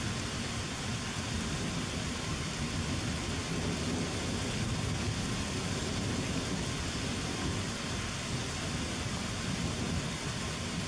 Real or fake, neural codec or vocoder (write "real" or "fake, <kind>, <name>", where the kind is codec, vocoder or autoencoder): real